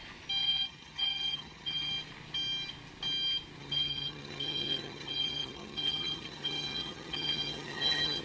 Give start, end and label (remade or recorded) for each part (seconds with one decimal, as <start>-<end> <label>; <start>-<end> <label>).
0.0-0.4 recorded; 0.4-1.9 remade; 1.9-3.6 recorded; 3.6-8.2 remade